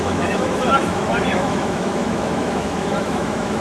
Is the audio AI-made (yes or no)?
yes